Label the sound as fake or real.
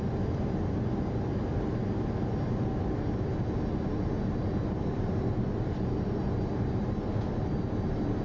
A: real